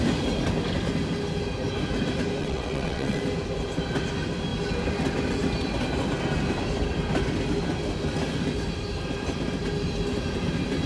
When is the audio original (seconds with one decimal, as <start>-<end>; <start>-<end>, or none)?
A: 0.0-2.4; 3.2-10.9